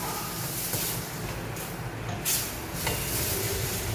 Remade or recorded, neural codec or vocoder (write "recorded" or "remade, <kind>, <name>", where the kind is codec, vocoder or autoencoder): recorded